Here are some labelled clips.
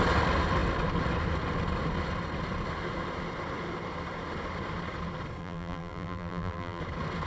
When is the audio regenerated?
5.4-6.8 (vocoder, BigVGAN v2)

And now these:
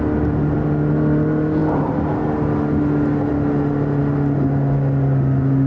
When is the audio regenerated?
none

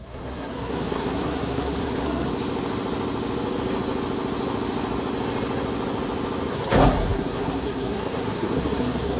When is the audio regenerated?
0.0-2.3 (codec, SNAC); 6.5-9.2

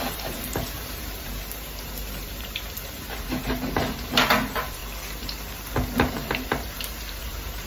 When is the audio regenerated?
0.0-4.8 (vocoder, BigVGAN v2); 6.1-7.7

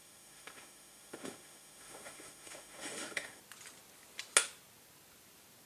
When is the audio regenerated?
0.0-3.4 (autoencoder, DAC-VAE)